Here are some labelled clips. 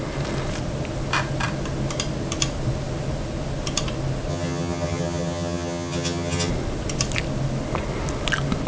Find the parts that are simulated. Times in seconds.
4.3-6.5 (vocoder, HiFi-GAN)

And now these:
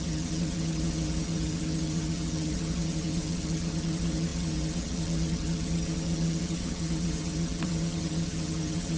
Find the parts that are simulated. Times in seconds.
0.0-9.0 (vocoder, HiFi-GAN)

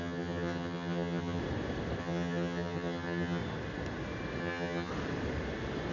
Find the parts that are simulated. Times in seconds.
0.0-1.4 (vocoder, HiFi-GAN); 2.0-3.4; 4.4-4.9

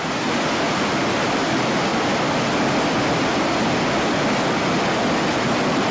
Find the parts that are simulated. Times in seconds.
none

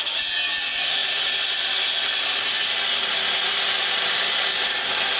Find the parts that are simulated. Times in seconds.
none

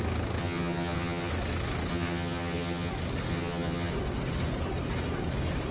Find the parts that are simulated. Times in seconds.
0.4-1.3 (vocoder, HiFi-GAN); 1.9-2.9; 3.3-3.9

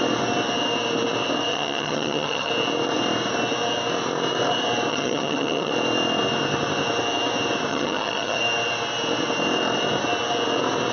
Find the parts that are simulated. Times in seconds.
1.5-2.5 (vocoder, HiFi-GAN); 4.9-5.7; 7.7-8.4